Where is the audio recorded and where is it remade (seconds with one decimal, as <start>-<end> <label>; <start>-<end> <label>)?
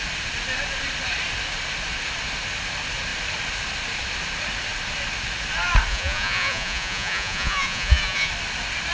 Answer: 0.0-5.9 recorded; 5.9-8.3 remade; 8.3-8.9 recorded